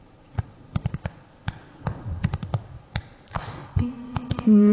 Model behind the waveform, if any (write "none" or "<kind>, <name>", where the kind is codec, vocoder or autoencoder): vocoder, Vocos